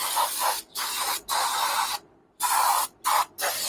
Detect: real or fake real